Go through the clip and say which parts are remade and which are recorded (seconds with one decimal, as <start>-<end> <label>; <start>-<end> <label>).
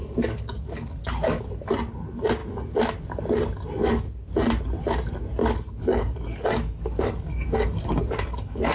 0.0-1.4 remade; 1.4-5.4 recorded; 5.4-8.7 remade